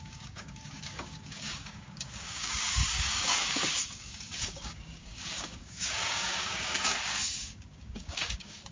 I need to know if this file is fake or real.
fake